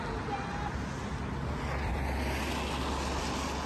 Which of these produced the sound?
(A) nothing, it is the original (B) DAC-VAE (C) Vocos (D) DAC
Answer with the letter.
A